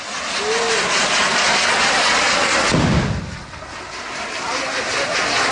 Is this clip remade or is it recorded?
recorded